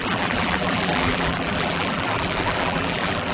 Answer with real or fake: fake